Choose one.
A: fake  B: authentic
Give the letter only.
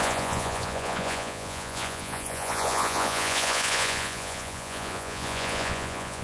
A